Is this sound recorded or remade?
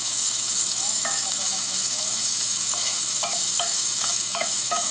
remade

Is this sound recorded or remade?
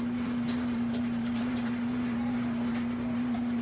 remade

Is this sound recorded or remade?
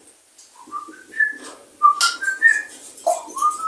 recorded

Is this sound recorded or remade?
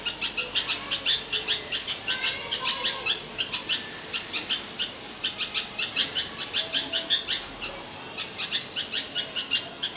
recorded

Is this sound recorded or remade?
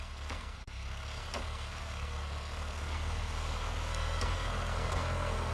remade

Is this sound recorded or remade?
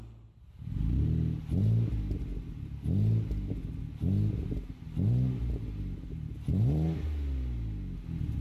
recorded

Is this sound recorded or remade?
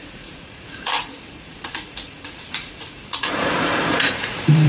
remade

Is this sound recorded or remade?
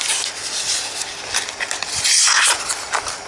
recorded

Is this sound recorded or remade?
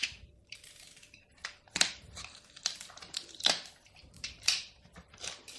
remade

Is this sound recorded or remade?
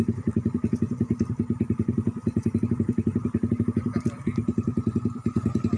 recorded